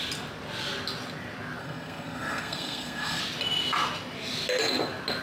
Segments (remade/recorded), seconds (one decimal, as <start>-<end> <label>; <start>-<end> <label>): 0.0-1.6 recorded; 1.6-3.2 remade; 3.2-5.2 recorded